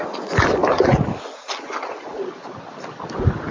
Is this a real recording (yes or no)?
yes